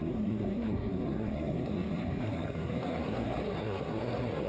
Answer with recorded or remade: remade